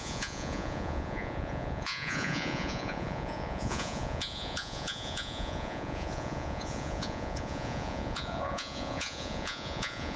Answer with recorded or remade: remade